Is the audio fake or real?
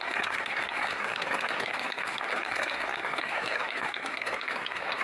fake